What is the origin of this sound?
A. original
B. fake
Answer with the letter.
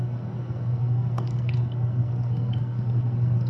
B